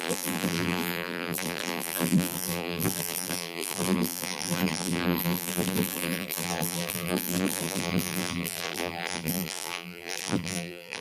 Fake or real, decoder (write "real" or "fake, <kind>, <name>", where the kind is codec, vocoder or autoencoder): fake, vocoder, BigVGAN v2